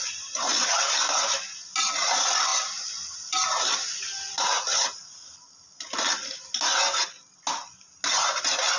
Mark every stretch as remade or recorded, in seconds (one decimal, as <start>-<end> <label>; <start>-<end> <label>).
0.0-8.8 recorded